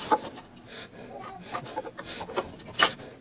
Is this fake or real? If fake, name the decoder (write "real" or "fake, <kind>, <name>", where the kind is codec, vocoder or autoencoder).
real